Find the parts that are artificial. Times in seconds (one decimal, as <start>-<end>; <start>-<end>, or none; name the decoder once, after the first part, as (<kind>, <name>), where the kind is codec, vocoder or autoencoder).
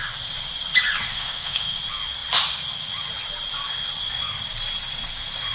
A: 1.1-1.8 (autoencoder, DAC-VAE)